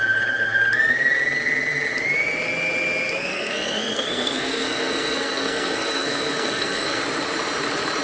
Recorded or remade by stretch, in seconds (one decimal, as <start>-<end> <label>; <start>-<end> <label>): 0.0-3.3 recorded; 3.3-7.0 remade; 7.0-8.0 recorded